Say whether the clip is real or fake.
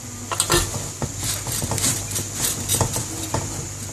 real